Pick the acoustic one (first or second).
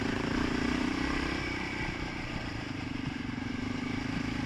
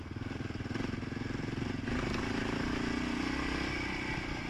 second